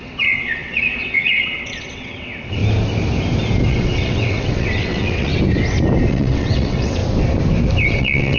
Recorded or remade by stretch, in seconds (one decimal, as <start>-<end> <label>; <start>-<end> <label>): 0.0-2.6 remade; 2.6-3.7 recorded; 3.7-5.3 remade; 5.3-6.1 recorded; 6.1-7.0 remade; 7.0-7.9 recorded; 7.9-8.4 remade